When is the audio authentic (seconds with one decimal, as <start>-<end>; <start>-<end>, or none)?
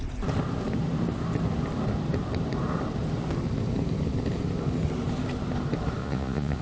0.0-6.0